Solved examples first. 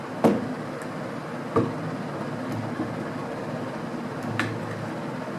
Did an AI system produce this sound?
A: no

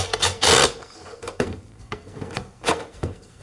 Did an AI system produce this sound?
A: yes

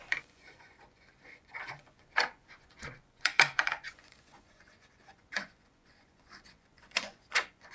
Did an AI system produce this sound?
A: yes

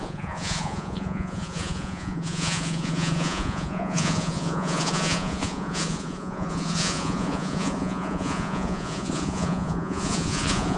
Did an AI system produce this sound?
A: yes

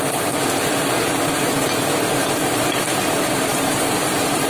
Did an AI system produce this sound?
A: no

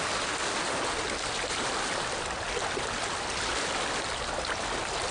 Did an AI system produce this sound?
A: no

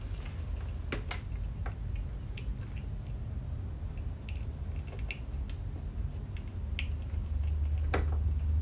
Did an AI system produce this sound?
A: no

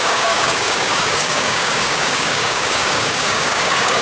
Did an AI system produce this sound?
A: yes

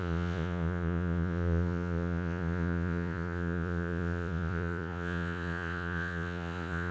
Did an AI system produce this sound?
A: yes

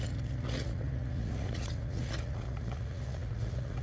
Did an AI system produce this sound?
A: yes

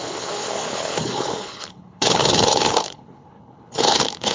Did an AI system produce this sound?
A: yes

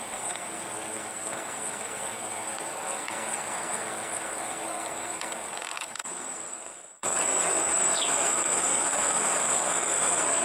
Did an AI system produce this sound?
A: yes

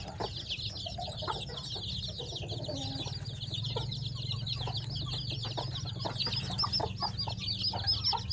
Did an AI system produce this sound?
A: no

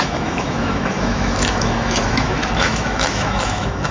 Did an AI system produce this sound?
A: yes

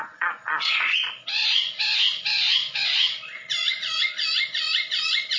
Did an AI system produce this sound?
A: yes